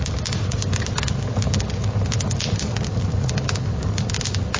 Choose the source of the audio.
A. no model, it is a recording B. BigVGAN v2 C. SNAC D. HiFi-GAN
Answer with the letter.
A